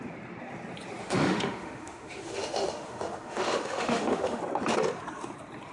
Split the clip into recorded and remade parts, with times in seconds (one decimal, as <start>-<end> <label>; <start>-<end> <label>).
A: 0.0-1.0 recorded; 1.0-4.4 remade; 4.4-5.7 recorded